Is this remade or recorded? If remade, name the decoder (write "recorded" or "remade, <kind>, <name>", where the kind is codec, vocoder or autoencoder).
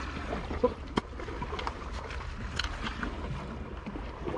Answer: recorded